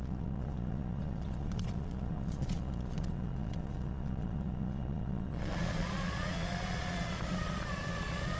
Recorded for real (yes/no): no